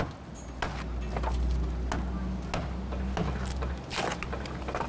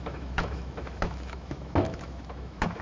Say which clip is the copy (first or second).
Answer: second